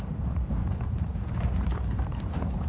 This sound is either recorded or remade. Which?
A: remade